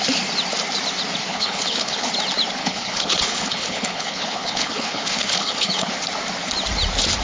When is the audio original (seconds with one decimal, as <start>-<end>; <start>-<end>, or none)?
0.0-1.3; 2.1-2.6; 5.9-7.2